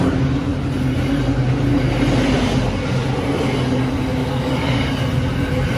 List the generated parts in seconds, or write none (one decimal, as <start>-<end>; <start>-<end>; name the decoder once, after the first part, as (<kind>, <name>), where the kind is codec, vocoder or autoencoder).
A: 4.2-4.9 (codec, DAC)